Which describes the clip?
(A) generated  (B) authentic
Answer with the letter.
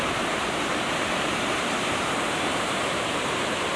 A